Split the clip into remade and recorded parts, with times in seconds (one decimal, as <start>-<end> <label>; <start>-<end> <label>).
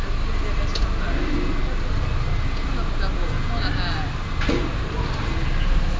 0.0-6.0 recorded